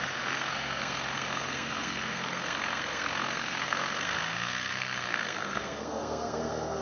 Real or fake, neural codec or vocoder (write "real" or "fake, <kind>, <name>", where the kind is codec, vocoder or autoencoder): fake, codec, SNAC